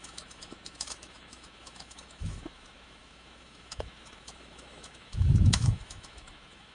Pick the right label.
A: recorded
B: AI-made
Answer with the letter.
B